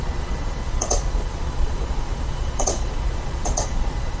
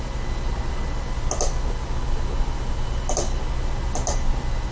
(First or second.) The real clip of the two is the second